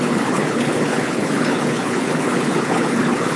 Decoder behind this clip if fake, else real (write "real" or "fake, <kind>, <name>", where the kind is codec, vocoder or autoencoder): fake, codec, HILCodec